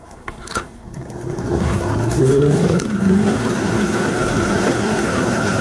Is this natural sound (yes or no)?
no